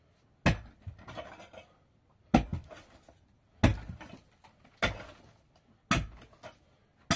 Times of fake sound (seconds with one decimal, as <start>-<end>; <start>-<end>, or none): none